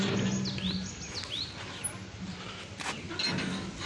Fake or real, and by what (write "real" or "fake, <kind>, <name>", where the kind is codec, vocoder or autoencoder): real